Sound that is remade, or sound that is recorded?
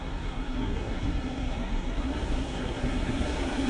remade